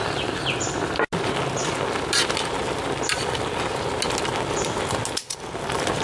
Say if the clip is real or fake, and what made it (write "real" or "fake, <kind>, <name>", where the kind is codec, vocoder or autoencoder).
real